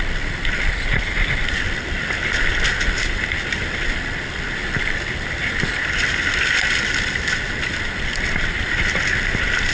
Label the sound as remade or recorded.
recorded